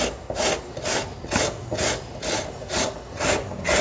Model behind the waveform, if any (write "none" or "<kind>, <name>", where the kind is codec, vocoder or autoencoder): none